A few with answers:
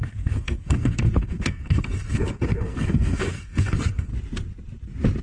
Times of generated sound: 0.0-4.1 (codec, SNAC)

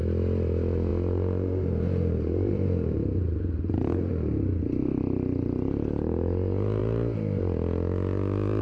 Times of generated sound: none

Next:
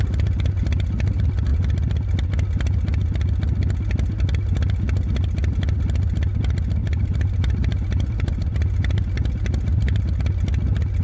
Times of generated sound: 6.8-10.2 (vocoder, BigVGAN v2)

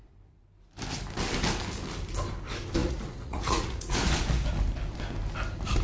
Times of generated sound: 2.8-4.0 (vocoder, Vocos)

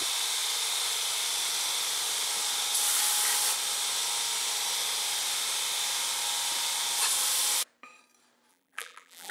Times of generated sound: 8.5-9.3 (vocoder, BigVGAN v2)

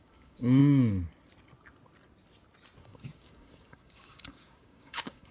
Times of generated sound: 0.0-0.6 (codec, DAC); 2.8-5.3

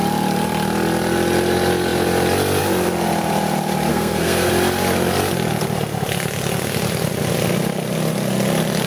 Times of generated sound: 3.9-4.5 (codec, SNAC)